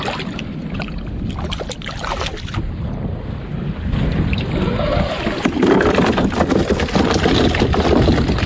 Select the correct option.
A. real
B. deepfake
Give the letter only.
A